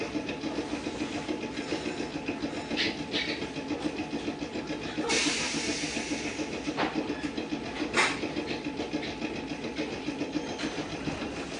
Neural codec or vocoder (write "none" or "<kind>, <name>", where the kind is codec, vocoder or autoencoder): none